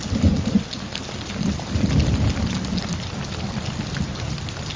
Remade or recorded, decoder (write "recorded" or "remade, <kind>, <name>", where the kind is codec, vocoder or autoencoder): recorded